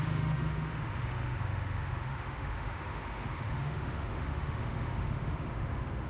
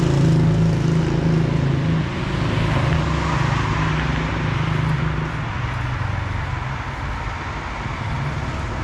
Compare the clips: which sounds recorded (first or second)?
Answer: second